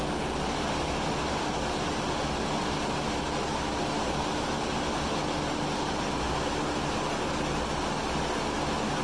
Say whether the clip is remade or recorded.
recorded